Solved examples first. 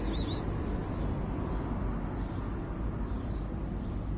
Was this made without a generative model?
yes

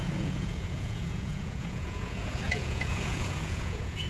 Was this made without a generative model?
no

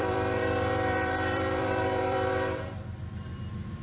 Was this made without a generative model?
no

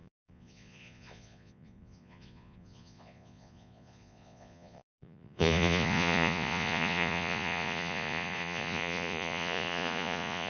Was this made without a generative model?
no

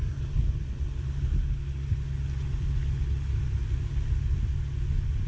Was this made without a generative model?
yes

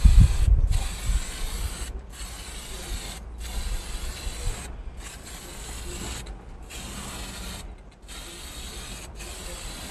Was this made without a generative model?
yes